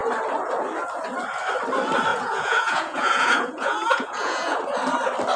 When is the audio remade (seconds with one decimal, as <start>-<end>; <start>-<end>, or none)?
2.1-4.6